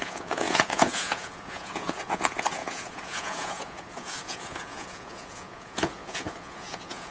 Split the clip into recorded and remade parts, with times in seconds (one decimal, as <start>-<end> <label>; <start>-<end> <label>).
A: 0.0-7.1 remade